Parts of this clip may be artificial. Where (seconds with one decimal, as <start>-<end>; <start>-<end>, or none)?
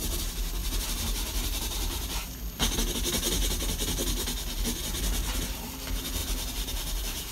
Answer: 0.6-2.4; 6.2-7.3